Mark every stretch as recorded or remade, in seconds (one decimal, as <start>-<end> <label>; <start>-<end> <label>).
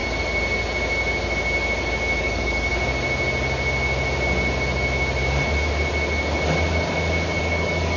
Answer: 0.0-2.2 recorded; 2.2-2.7 remade; 2.7-7.4 recorded; 7.4-8.0 remade